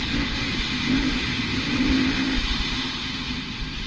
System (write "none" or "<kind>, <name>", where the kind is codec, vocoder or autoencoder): none